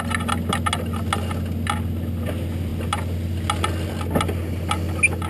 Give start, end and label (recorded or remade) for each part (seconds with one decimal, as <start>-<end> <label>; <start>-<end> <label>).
0.0-5.3 recorded

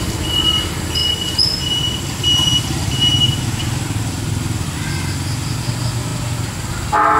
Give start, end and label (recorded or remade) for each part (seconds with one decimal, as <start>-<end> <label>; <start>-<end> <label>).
0.0-7.2 recorded

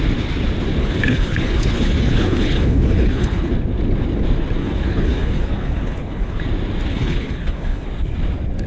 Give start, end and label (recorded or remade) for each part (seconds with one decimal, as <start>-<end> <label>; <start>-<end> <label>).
0.0-0.8 recorded; 0.8-3.5 remade; 3.5-4.6 recorded; 4.6-6.4 remade; 6.4-6.9 recorded; 6.9-7.9 remade; 7.9-8.7 recorded

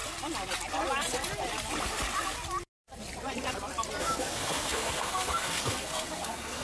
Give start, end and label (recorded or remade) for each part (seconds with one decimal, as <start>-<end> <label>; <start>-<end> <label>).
0.0-4.0 recorded; 4.0-6.6 remade

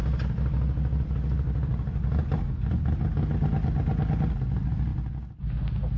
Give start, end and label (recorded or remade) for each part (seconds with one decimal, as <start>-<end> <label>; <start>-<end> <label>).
0.0-6.0 recorded